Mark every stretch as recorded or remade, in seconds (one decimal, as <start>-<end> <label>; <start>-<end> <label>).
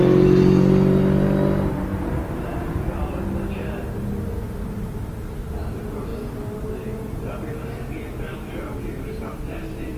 0.0-10.0 recorded